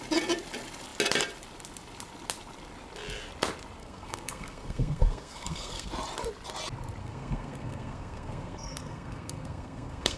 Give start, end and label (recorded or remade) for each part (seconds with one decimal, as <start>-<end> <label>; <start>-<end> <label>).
0.0-3.8 recorded; 3.8-5.9 remade; 5.9-7.0 recorded; 7.0-10.2 remade